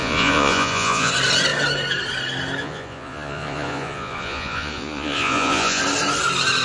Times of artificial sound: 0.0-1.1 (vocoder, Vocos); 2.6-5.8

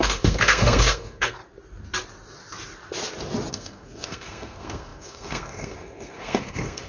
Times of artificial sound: 0.0-1.4 (codec, SNAC); 3.5-6.9

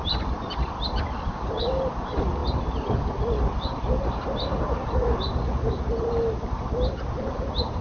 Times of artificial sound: none

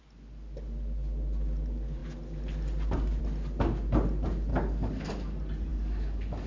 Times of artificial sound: 4.5-5.1 (codec, DAC); 5.7-6.5

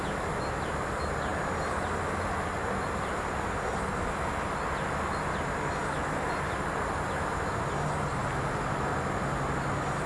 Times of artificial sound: none

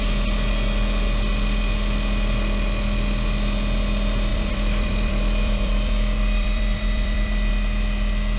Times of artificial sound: 4.3-7.5 (vocoder, BigVGAN v2)

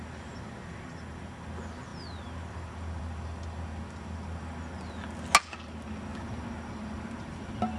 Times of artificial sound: none

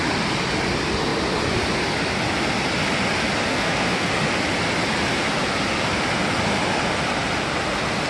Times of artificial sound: 3.5-4.1 (codec, SNAC)